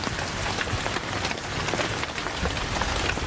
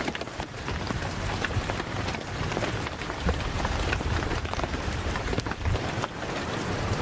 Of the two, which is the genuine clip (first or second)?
first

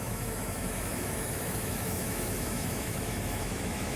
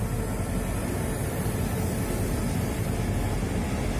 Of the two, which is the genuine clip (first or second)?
second